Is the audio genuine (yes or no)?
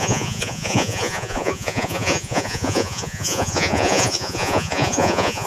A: no